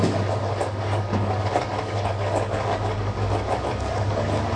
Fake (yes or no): yes